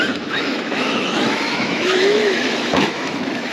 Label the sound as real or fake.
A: fake